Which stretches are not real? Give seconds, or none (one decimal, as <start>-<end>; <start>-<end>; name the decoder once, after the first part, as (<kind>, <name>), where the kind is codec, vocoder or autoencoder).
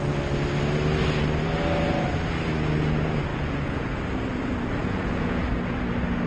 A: 3.3-4.0 (vocoder, Vocos); 4.8-5.4